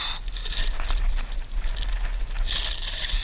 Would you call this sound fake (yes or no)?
no